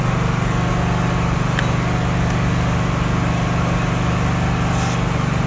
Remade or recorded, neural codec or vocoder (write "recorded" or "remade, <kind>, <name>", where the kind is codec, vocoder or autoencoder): recorded